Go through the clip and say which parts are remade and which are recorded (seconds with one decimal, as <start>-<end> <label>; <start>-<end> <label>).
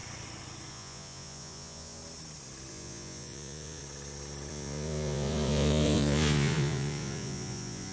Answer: 0.0-0.7 recorded; 0.7-2.0 remade; 2.0-2.7 recorded; 2.7-3.8 remade; 3.8-4.5 recorded; 4.5-7.9 remade